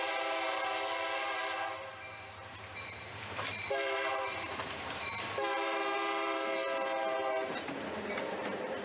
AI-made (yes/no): yes